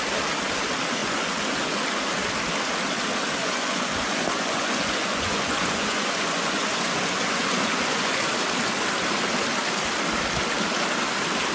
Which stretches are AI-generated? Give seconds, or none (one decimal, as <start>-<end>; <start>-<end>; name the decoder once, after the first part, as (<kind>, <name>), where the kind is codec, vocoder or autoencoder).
1.0-1.7 (vocoder, Vocos); 3.4-8.2